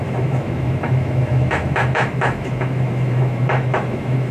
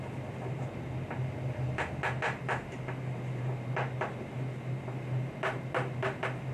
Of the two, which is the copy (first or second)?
first